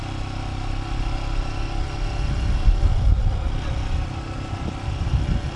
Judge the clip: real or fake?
real